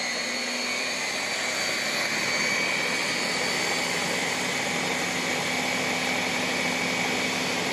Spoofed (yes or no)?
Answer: no